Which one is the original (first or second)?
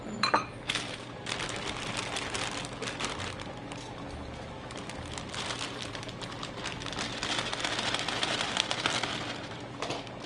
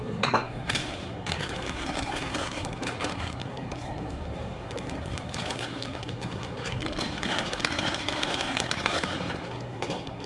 first